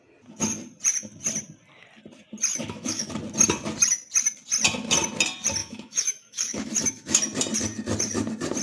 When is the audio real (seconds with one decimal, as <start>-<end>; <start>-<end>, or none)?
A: 0.0-2.5; 3.1-5.6; 7.2-8.6